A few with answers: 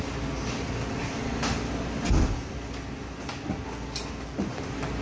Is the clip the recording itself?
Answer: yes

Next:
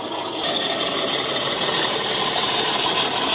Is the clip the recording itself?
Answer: yes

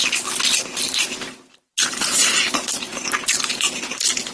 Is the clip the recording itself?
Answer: yes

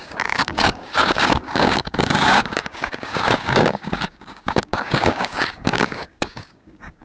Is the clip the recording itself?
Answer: no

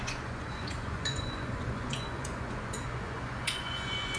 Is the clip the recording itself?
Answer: no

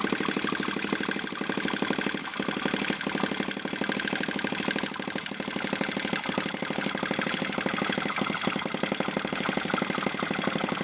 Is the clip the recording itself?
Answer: yes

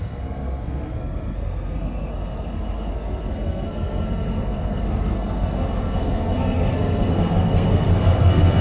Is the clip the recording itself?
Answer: no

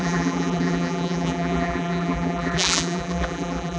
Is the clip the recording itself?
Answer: no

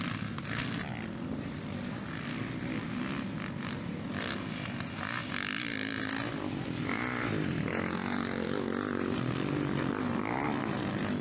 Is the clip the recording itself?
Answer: yes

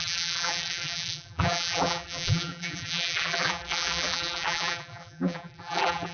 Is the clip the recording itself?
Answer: no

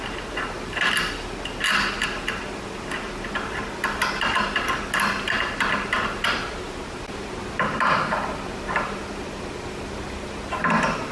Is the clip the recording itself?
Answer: yes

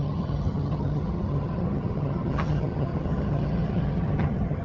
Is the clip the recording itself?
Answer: no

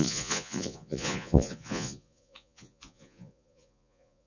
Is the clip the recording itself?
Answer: no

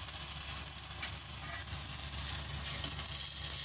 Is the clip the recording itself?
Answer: yes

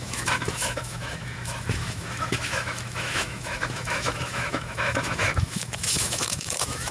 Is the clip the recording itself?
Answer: no